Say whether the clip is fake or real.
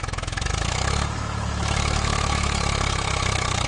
fake